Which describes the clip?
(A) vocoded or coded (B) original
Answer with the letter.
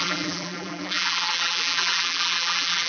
A